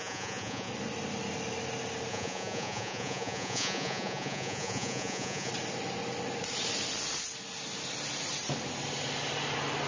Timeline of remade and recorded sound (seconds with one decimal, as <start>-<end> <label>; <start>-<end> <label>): 0.0-0.7 remade; 0.7-2.1 recorded; 2.1-5.5 remade; 5.5-9.9 recorded